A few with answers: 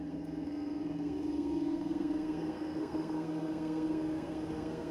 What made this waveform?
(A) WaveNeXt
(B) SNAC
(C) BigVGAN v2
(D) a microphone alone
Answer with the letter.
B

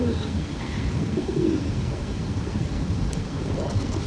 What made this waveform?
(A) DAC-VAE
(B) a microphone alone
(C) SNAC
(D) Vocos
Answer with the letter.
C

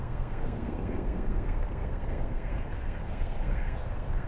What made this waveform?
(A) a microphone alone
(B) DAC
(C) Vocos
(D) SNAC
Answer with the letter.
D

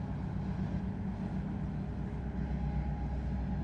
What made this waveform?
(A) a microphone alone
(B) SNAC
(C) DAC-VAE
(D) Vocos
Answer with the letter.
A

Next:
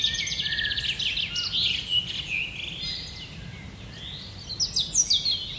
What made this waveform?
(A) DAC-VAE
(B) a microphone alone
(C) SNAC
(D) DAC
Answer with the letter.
B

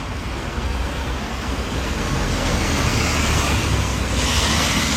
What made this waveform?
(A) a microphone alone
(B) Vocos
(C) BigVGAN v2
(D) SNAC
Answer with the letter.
D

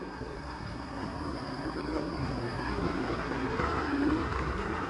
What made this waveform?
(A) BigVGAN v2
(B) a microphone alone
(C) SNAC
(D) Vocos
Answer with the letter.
C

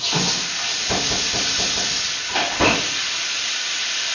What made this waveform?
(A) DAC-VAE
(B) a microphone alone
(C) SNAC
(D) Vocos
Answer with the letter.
B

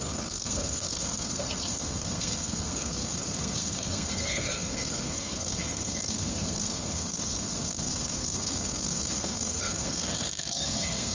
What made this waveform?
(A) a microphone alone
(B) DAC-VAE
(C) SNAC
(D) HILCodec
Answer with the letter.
C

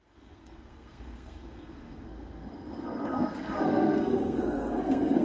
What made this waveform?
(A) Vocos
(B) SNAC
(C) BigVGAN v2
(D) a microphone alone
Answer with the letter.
B